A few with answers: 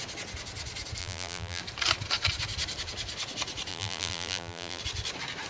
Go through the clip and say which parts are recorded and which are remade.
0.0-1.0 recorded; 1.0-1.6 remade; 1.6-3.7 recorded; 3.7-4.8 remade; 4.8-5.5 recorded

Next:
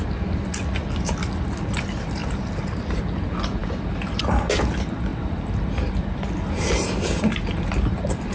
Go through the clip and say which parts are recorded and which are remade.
0.0-8.3 recorded

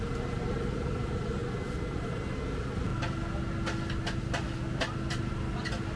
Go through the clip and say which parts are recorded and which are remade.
0.0-6.0 recorded